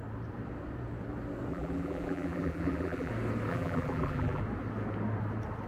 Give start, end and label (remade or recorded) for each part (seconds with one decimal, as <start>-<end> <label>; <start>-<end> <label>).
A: 0.0-1.5 recorded; 1.5-3.1 remade; 3.1-3.5 recorded; 3.5-4.4 remade; 4.4-5.7 recorded